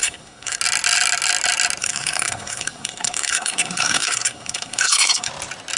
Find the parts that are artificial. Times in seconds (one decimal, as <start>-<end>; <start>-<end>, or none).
0.0-0.6; 1.8-5.3